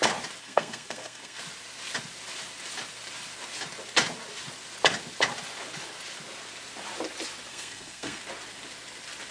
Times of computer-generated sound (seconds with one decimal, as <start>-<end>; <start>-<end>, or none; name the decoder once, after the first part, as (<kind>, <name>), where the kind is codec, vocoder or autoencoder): 0.4-1.4 (codec, SNAC); 7.5-8.2